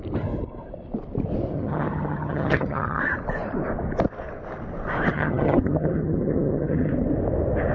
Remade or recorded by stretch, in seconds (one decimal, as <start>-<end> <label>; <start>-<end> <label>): 0.0-1.5 recorded; 1.5-3.0 remade; 3.0-5.1 recorded; 5.1-6.9 remade; 6.9-7.7 recorded